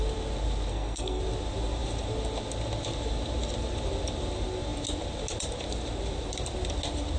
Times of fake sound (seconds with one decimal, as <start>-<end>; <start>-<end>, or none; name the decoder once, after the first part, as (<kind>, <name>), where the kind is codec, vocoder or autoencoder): 0.7-1.2 (codec, SNAC)